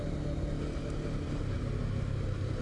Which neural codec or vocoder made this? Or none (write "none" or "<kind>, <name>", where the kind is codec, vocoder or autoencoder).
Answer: none